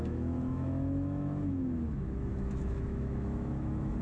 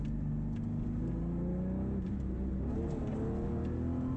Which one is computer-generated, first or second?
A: first